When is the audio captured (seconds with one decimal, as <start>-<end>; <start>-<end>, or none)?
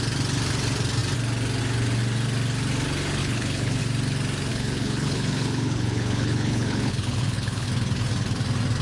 0.0-3.2; 3.8-4.5; 7.7-8.8